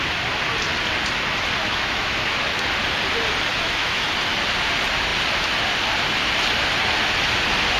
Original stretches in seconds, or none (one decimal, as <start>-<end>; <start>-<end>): 0.0-1.6; 2.6-3.5; 4.1-7.8